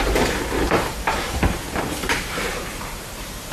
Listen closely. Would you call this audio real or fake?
fake